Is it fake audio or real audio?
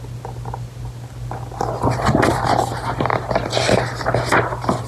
real